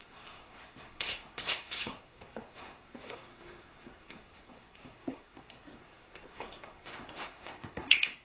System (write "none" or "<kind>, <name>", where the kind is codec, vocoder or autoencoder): codec, SNAC